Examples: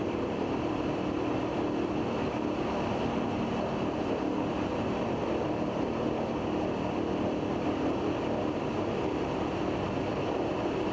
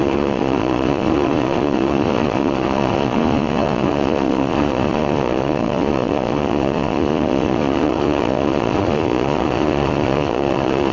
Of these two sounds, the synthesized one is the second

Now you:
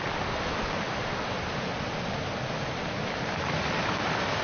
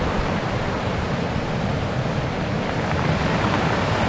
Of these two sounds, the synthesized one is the second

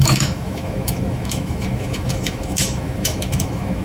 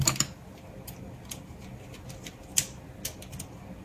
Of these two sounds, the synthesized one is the first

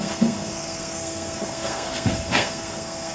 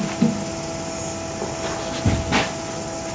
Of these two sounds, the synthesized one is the first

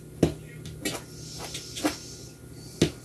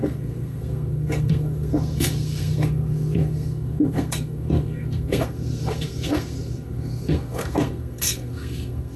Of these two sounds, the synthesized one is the second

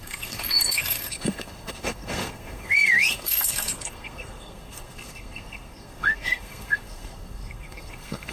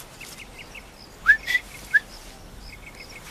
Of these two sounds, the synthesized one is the first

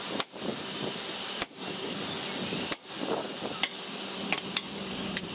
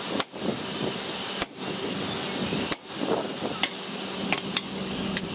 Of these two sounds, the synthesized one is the first